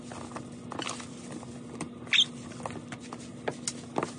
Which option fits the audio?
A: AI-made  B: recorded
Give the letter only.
B